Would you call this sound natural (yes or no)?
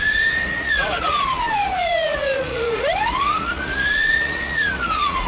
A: no